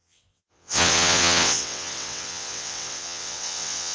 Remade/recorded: remade